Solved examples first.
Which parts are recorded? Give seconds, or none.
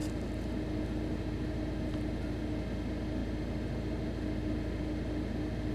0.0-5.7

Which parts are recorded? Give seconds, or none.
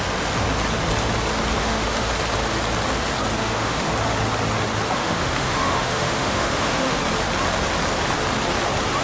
0.0-1.6; 2.1-3.4; 3.9-5.0; 7.0-9.0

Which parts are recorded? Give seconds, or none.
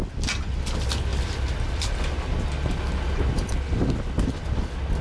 0.0-1.1; 2.1-5.0